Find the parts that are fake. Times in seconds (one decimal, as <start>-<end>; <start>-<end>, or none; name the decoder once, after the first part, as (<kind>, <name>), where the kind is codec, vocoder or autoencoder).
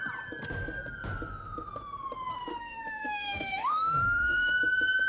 2.5-4.5 (autoencoder, DAC-VAE)